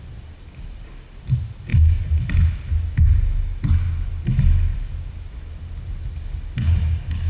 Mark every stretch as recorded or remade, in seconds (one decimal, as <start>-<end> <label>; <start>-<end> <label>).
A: 0.0-7.3 recorded